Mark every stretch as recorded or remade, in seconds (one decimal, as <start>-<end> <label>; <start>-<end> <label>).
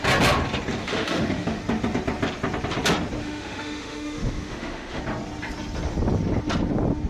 0.0-0.8 recorded; 0.8-1.6 remade; 1.6-3.2 recorded; 3.2-5.0 remade; 5.0-7.1 recorded